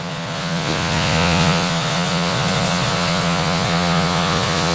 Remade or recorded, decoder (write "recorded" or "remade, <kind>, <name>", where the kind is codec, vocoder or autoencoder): remade, vocoder, Vocos